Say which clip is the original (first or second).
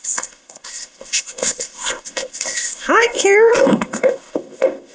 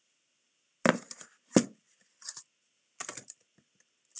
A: second